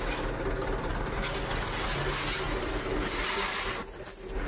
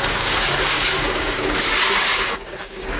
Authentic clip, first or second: first